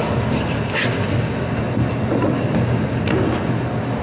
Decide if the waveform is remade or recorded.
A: recorded